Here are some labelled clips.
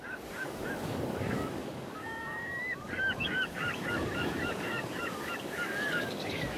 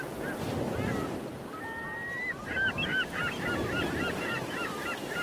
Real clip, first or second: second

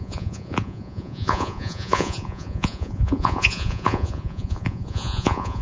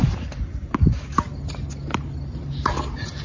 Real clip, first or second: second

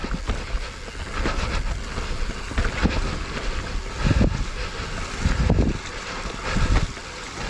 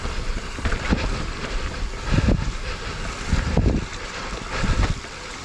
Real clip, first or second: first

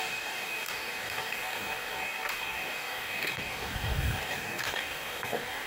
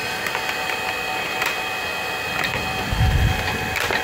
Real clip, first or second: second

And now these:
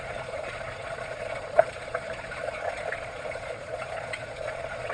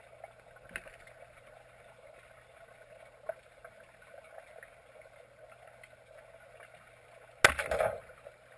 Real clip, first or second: second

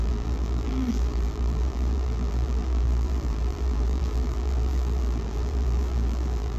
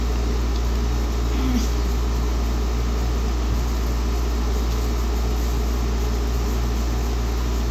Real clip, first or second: second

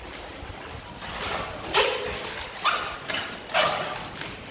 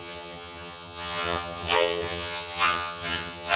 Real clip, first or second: first